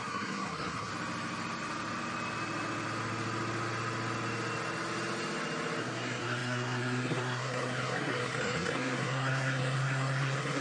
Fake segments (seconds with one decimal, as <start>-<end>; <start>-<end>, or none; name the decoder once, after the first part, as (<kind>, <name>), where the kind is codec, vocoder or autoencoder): 0.0-0.9 (codec, SNAC); 5.8-10.6